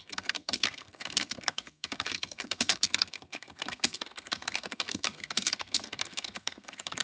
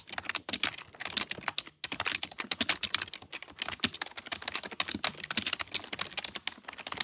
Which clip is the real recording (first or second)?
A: second